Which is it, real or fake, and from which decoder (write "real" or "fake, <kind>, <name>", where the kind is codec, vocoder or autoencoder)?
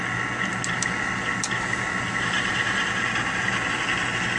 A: real